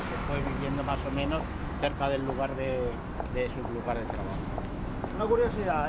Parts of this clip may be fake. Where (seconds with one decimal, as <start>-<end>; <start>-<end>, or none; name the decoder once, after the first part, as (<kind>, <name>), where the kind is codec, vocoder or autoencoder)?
0.9-1.6 (autoencoder, DAC-VAE); 2.5-3.0; 4.3-5.2